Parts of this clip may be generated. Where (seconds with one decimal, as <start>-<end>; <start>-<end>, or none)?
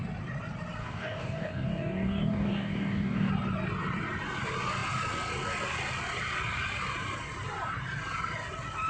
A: 0.8-3.3